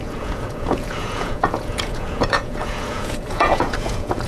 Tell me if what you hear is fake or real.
fake